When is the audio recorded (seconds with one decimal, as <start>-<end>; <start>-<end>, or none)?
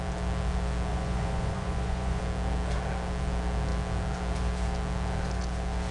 0.0-0.9; 2.2-5.9